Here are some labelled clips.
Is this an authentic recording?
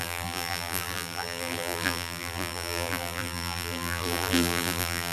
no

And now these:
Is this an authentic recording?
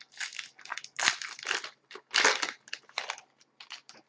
yes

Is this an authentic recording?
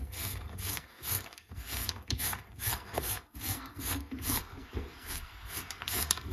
no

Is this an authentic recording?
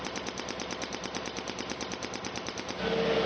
yes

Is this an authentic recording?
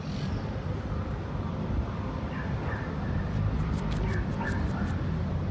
no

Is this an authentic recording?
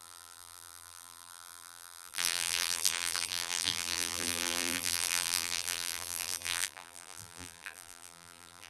no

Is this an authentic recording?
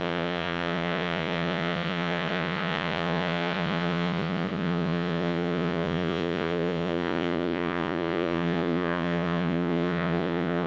no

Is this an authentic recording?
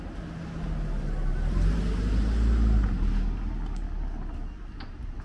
yes